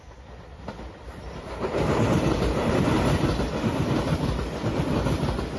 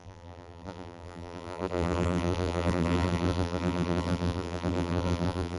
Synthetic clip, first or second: second